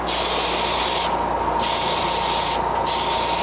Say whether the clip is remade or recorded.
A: recorded